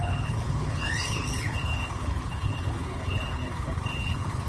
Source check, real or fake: fake